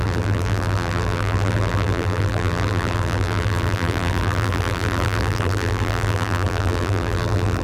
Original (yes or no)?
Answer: no